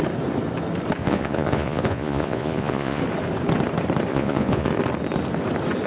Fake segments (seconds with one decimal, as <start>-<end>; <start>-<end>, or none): 1.0-3.0; 4.1-4.7

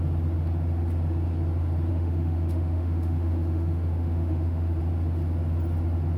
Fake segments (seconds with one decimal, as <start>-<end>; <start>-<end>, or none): 1.9-4.8

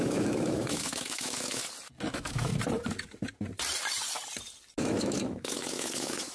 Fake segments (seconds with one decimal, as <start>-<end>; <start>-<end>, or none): 0.0-1.6; 2.1-2.5; 4.8-6.3

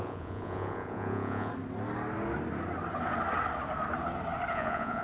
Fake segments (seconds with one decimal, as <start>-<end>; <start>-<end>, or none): 0.0-1.5; 4.5-5.0

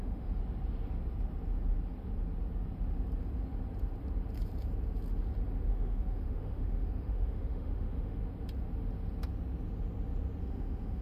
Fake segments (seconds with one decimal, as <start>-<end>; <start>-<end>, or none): 0.0-0.4; 5.7-8.2; 10.4-11.0

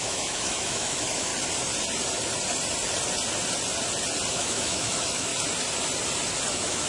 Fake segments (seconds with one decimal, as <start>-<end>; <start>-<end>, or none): 0.0-1.3; 4.3-5.3; 6.5-6.9